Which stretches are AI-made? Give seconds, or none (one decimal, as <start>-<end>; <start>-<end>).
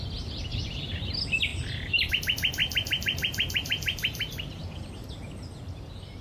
0.5-1.1; 1.5-2.1; 2.6-4.6